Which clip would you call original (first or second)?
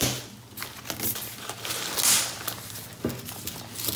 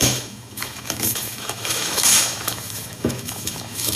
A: first